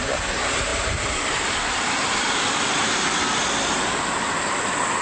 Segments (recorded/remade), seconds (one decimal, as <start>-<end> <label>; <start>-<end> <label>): 0.0-0.7 recorded; 0.7-3.7 remade; 3.7-5.0 recorded